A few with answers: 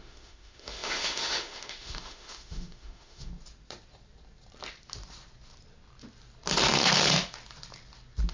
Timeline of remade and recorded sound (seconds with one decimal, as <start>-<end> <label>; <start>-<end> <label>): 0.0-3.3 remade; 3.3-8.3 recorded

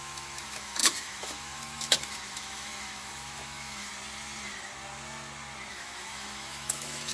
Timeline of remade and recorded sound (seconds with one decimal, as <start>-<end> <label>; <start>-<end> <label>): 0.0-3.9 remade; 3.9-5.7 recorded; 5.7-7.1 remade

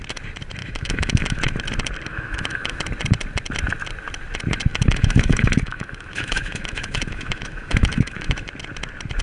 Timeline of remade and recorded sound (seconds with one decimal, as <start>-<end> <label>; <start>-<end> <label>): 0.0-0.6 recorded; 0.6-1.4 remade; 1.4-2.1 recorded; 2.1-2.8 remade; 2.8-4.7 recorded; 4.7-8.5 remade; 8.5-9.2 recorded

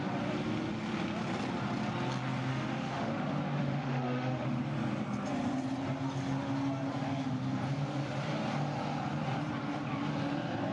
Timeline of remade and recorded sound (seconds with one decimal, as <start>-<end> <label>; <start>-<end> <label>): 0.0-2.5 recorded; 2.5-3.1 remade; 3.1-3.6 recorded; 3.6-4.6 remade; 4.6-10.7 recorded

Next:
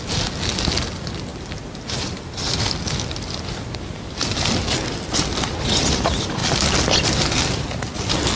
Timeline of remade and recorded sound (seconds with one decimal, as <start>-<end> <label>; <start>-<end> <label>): 0.0-8.4 recorded

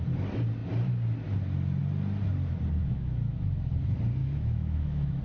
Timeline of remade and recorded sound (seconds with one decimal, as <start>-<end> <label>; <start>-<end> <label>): 0.0-2.8 recorded; 2.8-3.8 remade; 3.8-4.2 recorded; 4.2-5.2 remade

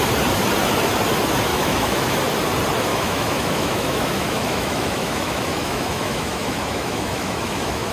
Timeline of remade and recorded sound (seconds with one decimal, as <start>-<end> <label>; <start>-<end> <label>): 0.0-1.5 recorded; 1.5-2.2 remade; 2.2-2.9 recorded; 2.9-7.9 remade

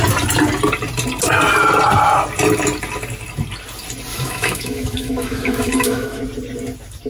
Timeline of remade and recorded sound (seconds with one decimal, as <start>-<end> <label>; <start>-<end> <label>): 0.0-4.1 recorded; 4.1-6.2 remade; 6.2-7.1 recorded